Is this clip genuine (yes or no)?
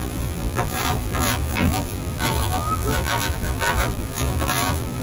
no